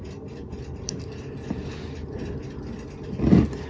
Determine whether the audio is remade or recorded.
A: recorded